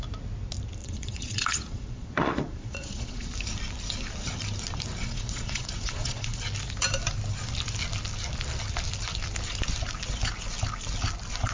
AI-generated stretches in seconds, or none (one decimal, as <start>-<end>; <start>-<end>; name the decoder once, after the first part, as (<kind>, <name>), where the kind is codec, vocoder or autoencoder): 0.8-3.3 (vocoder, Vocos); 5.0-6.4